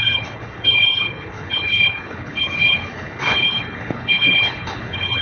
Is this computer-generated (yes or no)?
yes